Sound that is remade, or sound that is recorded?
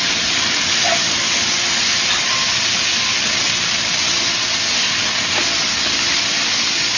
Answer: recorded